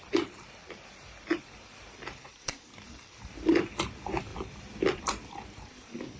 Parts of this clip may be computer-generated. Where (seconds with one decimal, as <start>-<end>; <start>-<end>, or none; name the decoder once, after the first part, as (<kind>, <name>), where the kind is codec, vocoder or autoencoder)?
4.3-5.0 (vocoder, BigVGAN v2)